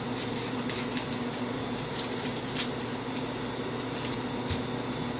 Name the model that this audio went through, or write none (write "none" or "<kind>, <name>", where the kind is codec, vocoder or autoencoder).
none